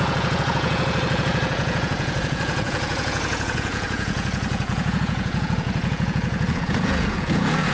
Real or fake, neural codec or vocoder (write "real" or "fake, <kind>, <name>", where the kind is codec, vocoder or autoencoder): fake, vocoder, Vocos